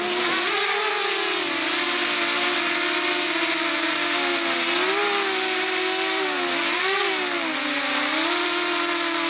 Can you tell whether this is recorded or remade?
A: recorded